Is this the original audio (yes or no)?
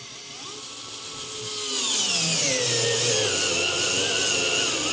yes